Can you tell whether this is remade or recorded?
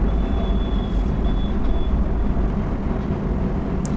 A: recorded